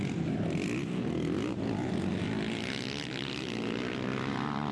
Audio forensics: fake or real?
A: real